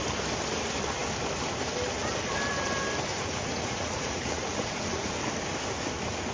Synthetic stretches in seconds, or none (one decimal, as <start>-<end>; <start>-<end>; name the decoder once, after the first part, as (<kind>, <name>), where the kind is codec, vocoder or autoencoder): 3.1-5.1 (vocoder, Vocos)